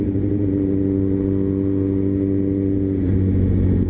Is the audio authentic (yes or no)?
yes